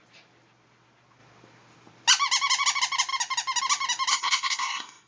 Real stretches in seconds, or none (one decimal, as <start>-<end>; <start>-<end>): 0.0-4.1